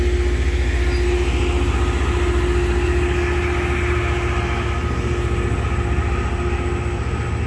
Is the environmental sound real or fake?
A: real